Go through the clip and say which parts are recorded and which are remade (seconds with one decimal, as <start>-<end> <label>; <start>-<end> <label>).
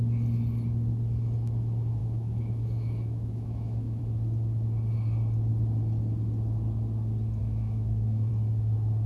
0.0-2.0 recorded; 2.0-4.0 remade; 4.0-7.4 recorded; 7.4-8.3 remade; 8.3-9.1 recorded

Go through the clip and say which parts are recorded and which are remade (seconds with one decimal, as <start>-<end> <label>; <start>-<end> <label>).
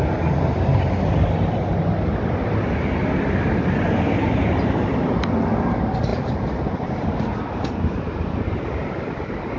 0.0-9.6 recorded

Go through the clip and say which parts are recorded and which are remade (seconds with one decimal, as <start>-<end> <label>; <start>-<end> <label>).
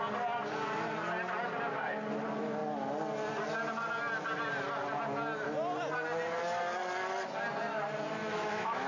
0.0-8.2 recorded; 8.2-8.9 remade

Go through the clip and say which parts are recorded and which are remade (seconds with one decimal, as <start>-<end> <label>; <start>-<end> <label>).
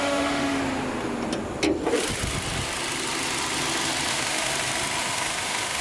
0.0-0.6 remade; 0.6-4.1 recorded; 4.1-4.5 remade; 4.5-5.0 recorded; 5.0-5.8 remade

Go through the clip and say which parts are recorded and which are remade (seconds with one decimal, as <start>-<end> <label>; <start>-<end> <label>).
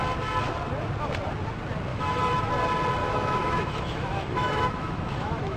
0.0-1.9 recorded; 1.9-2.5 remade; 2.5-3.0 recorded; 3.0-5.6 remade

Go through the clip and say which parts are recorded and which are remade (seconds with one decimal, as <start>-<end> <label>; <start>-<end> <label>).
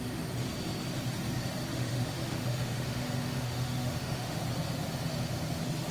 0.0-1.7 recorded; 1.7-4.4 remade; 4.4-5.9 recorded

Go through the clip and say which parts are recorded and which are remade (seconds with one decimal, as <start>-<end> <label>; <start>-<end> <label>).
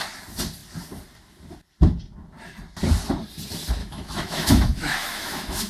0.0-3.8 recorded; 3.8-5.7 remade